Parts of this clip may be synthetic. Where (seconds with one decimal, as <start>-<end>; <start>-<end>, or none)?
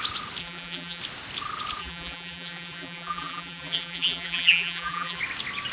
0.4-1.0; 1.8-5.2